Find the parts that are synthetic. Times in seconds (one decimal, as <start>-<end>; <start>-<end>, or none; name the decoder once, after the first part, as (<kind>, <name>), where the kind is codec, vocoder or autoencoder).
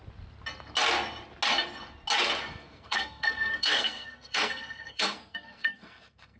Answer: 2.5-6.4 (codec, SNAC)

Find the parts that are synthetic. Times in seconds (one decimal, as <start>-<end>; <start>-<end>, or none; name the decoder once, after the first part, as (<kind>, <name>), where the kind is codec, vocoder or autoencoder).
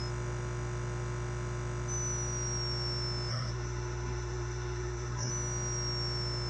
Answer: 3.3-5.3 (codec, SNAC)